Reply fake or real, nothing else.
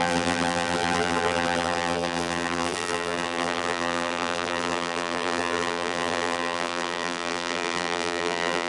fake